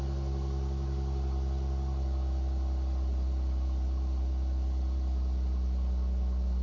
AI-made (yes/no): no